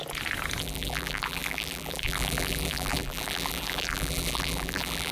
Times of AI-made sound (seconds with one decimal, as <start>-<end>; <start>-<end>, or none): 0.6-5.1